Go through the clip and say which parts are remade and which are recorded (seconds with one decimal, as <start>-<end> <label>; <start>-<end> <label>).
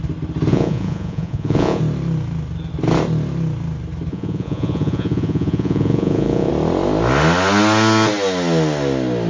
0.0-0.5 recorded; 0.5-1.8 remade; 1.8-4.1 recorded; 4.1-6.5 remade; 6.5-9.3 recorded